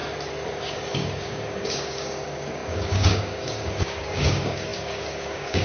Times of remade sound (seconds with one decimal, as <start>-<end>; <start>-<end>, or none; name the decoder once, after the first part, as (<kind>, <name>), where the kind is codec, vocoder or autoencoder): 0.5-5.6 (codec, DAC)